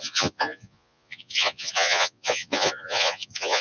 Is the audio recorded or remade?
remade